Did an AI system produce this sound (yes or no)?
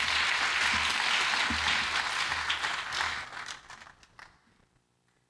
no